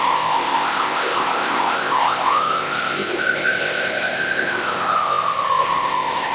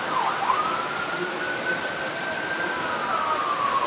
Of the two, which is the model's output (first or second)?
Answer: first